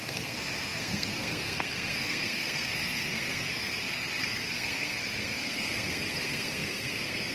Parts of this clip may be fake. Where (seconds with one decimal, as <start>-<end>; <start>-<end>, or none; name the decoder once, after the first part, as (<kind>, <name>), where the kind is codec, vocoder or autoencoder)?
0.0-7.3 (codec, SNAC)